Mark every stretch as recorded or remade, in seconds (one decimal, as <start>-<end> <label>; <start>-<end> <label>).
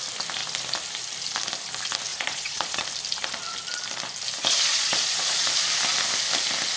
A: 0.0-2.1 recorded; 2.1-2.8 remade; 2.8-4.7 recorded; 4.7-5.5 remade; 5.5-6.8 recorded